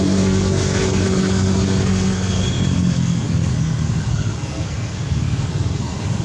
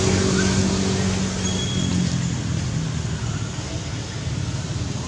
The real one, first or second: second